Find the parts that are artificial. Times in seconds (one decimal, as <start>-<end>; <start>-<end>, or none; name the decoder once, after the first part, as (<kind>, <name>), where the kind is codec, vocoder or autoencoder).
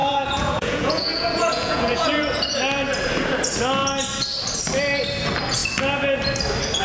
0.0-2.4 (vocoder, Vocos)